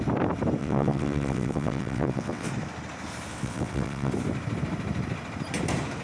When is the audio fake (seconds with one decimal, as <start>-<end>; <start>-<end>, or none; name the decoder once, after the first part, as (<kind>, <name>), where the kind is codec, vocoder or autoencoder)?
0.6-2.5 (vocoder, WaveNeXt); 3.3-4.1